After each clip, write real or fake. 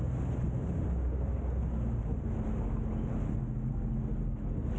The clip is real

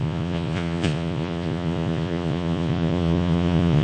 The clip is fake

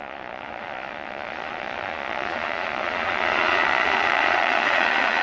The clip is fake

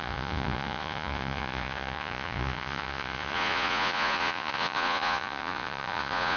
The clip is fake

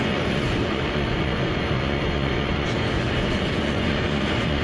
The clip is fake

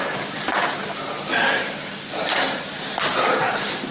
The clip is real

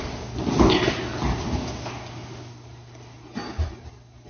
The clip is real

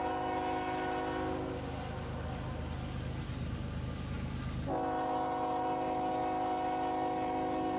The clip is real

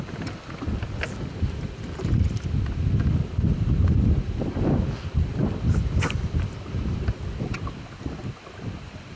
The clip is real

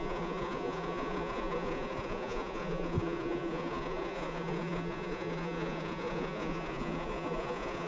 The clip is fake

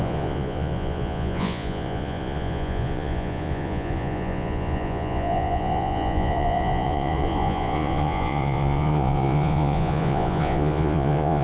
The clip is fake